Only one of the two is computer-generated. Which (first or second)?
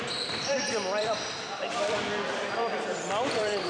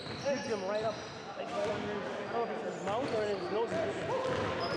first